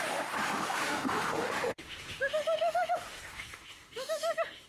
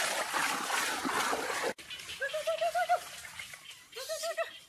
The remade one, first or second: first